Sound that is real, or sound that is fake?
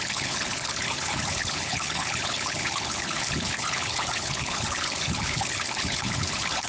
fake